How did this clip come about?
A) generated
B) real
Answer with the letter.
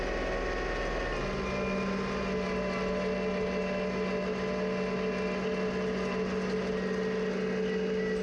B